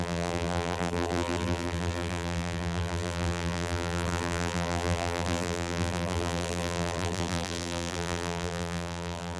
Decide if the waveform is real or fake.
fake